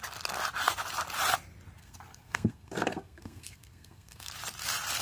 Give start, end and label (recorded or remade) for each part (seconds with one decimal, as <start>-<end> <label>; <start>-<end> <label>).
0.0-1.8 recorded; 1.8-4.3 remade; 4.3-5.0 recorded